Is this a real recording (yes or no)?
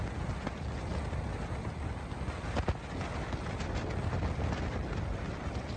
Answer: yes